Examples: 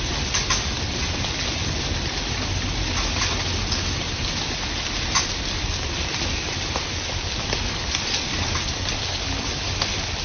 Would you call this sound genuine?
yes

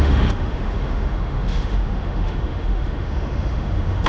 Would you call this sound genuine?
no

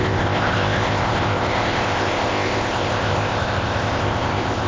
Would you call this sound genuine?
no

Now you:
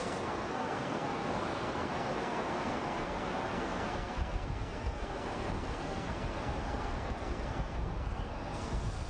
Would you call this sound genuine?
no